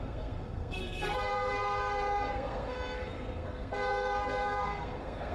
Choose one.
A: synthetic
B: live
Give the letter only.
A